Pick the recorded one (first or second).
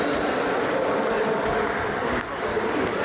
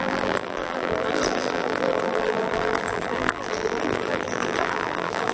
first